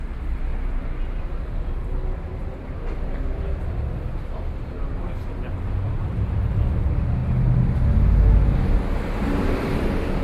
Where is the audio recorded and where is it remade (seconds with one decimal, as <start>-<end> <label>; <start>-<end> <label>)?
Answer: 0.0-0.5 remade; 0.5-1.5 recorded; 1.5-7.2 remade; 7.2-9.4 recorded; 9.4-10.2 remade